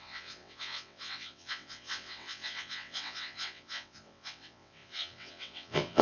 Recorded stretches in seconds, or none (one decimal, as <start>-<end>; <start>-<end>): none